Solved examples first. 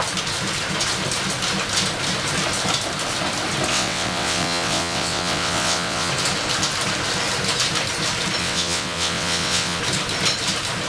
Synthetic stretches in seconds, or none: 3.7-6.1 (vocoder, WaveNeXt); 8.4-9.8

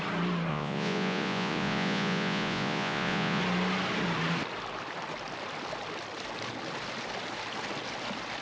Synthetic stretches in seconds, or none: 0.5-3.4 (vocoder, Vocos)

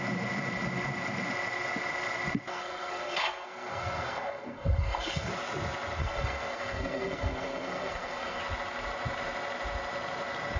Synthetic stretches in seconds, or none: 2.5-5.3 (codec, SNAC); 6.0-8.4

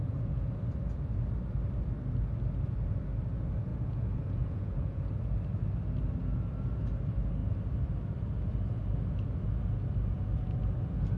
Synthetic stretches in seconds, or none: 0.0-0.5 (vocoder, Vocos); 3.7-5.1